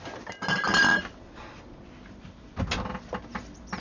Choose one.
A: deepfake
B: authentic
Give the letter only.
B